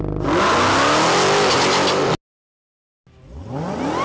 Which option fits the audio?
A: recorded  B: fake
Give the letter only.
A